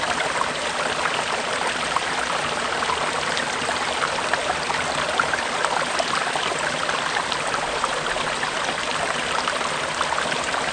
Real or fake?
real